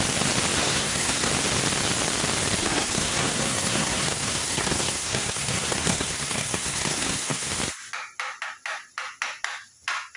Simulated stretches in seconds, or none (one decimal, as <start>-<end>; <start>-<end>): 0.6-1.3; 2.6-7.5